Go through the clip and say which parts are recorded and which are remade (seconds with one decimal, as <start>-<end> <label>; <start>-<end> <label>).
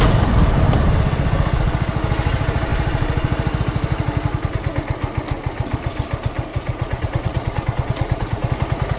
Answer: 0.0-6.5 recorded; 6.5-8.5 remade; 8.5-9.0 recorded